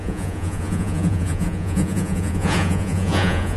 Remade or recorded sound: remade